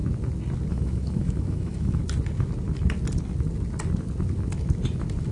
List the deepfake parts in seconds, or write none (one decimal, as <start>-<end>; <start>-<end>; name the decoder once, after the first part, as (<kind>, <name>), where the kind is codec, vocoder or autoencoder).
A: 0.7-2.0 (autoencoder, DAC-VAE)